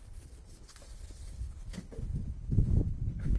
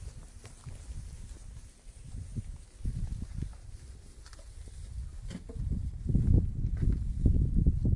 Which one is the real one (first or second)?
second